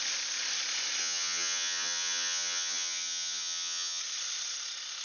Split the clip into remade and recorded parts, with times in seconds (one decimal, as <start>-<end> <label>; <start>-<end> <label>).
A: 0.0-1.0 recorded; 1.0-4.0 remade; 4.0-5.0 recorded